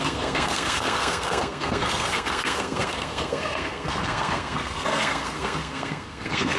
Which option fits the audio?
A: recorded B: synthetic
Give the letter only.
B